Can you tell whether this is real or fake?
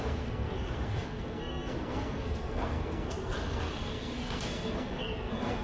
fake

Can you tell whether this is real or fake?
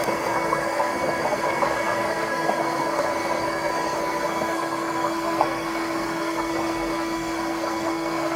fake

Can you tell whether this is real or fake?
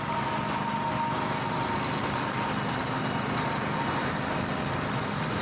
real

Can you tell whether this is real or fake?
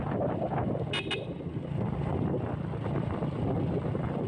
real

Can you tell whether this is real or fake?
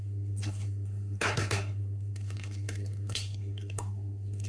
fake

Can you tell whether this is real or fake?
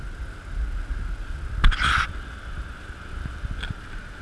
real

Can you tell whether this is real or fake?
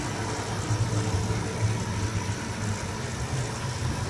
real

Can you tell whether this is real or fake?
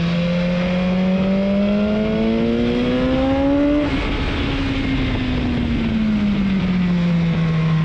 real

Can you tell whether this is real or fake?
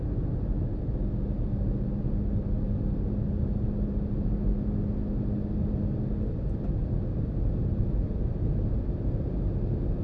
real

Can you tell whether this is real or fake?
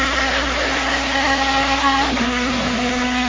fake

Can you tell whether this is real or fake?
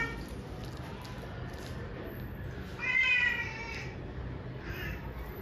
real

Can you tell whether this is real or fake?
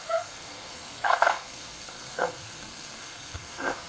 fake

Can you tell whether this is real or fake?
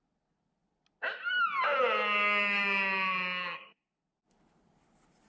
real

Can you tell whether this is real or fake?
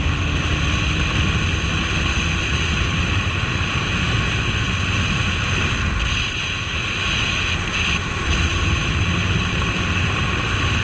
real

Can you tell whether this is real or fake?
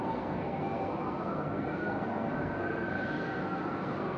fake